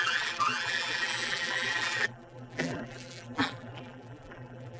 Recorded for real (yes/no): no